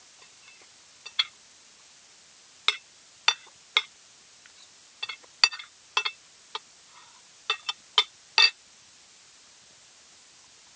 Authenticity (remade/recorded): recorded